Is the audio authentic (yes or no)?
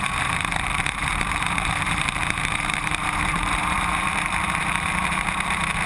no